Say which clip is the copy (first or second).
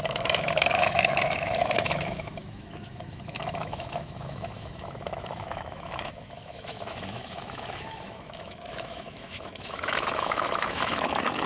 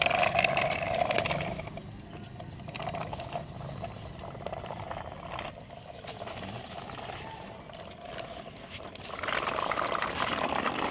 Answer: first